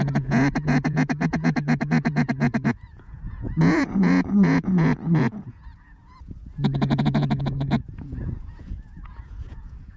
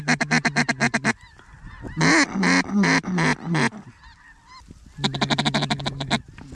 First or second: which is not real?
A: first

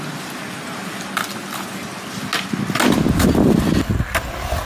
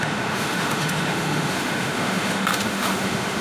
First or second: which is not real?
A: second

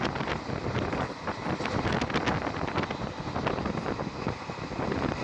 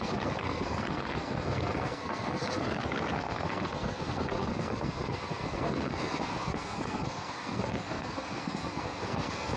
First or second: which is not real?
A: second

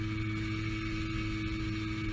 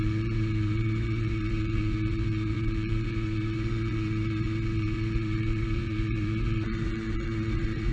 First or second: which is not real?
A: second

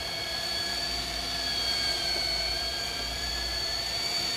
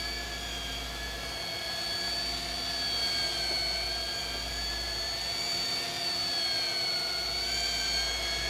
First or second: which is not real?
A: first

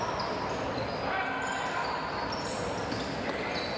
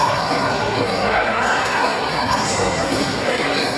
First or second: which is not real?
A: second